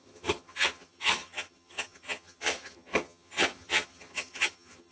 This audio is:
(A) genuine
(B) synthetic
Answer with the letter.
B